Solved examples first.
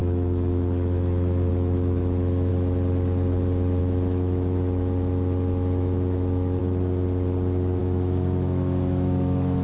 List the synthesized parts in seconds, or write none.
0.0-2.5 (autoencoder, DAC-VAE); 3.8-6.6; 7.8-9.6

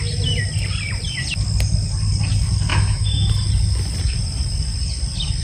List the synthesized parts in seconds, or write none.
2.7-3.3 (autoencoder, DAC-VAE)

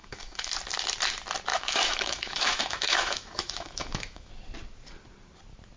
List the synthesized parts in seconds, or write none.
0.0-0.5 (autoencoder, DAC-VAE); 1.5-4.3

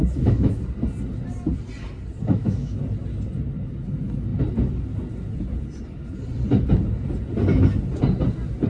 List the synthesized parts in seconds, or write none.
0.0-0.6 (autoencoder, DAC-VAE); 2.2-2.8

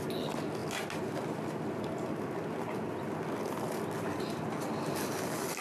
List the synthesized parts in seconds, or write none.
none

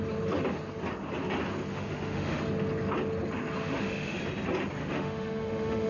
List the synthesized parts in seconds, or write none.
1.7-2.4 (autoencoder, DAC-VAE); 3.6-4.2; 4.8-5.9